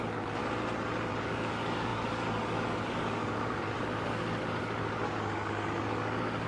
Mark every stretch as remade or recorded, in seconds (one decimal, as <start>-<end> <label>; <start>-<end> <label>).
0.0-0.4 remade; 0.4-1.1 recorded; 1.1-6.5 remade